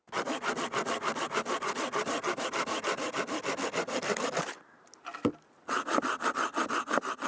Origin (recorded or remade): recorded